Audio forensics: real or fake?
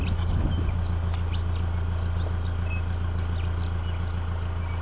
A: real